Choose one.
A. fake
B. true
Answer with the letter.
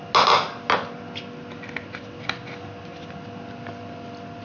B